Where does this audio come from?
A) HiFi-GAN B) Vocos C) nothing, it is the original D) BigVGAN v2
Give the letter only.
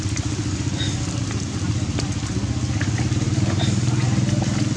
C